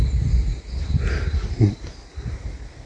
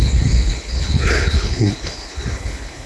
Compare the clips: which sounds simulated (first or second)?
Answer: second